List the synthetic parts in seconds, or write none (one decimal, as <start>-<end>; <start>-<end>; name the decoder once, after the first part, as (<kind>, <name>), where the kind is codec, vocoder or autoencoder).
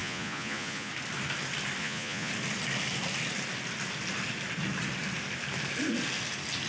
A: 0.0-0.9 (vocoder, Vocos); 1.8-2.3